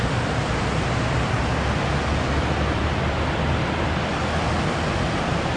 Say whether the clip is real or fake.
real